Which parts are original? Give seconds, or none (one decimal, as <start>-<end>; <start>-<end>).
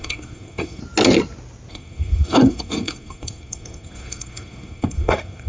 0.8-1.7